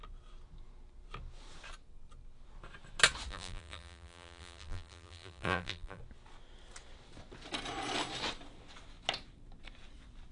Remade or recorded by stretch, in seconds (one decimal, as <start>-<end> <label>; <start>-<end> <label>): 0.0-3.3 recorded; 3.3-6.0 remade; 6.0-10.3 recorded